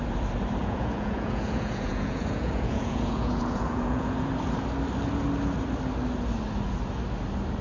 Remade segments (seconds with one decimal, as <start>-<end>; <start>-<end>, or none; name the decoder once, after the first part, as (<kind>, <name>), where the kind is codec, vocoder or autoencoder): 0.6-4.3 (vocoder, Vocos)

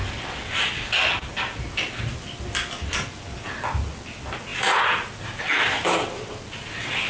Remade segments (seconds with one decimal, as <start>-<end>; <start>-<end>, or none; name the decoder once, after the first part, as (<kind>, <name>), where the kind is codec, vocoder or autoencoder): 4.5-5.7 (vocoder, BigVGAN v2)

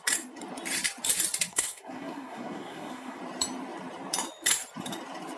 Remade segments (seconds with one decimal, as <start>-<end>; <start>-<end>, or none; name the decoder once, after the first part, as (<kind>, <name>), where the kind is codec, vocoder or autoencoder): 1.5-3.2 (codec, SNAC)

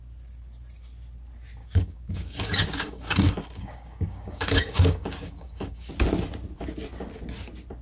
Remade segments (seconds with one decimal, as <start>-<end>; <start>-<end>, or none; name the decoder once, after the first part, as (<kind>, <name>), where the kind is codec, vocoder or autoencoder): 1.6-5.9 (codec, DAC)

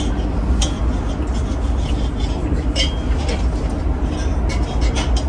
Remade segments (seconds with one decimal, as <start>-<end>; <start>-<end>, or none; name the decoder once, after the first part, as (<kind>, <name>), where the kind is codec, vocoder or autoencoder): 4.3-5.3 (vocoder, BigVGAN v2)

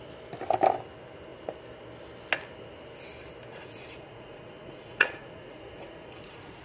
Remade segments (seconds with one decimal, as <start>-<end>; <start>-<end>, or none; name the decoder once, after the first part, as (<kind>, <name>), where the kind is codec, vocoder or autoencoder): 3.5-6.6 (vocoder, Vocos)